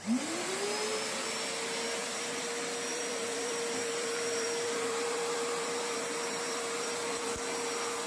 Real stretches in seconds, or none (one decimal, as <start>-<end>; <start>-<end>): 0.0-2.0; 2.5-2.9; 7.3-8.1

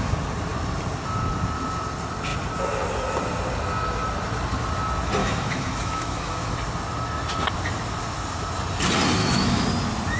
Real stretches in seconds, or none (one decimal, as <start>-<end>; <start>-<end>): 0.0-5.2; 6.5-9.2; 9.7-10.2

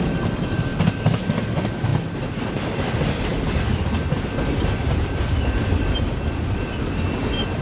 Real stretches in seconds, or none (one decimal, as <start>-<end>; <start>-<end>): 0.7-1.2; 1.9-2.5; 3.3-4.8

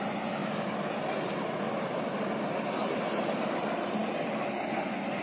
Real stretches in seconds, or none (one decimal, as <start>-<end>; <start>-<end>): 0.0-5.2

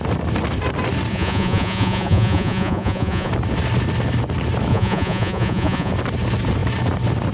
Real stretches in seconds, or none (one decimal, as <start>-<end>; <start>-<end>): 0.0-1.1; 3.3-4.7; 5.9-7.3